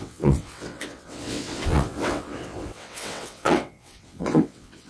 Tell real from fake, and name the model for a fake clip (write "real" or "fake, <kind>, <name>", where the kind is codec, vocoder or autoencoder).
fake, vocoder, WaveNeXt